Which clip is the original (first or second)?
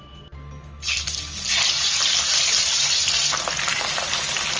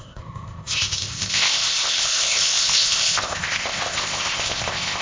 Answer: first